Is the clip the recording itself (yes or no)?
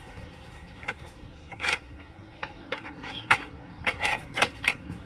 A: no